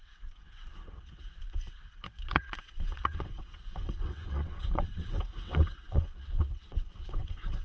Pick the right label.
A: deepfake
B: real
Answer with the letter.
A